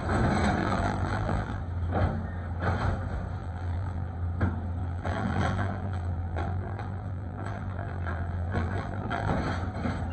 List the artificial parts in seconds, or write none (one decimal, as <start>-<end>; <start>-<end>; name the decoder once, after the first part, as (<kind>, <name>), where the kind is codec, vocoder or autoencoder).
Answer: 0.6-1.6 (vocoder, BigVGAN v2); 3.4-4.1; 4.8-9.3